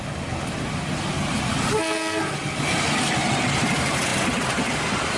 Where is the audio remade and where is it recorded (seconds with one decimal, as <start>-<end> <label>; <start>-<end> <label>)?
0.0-5.2 recorded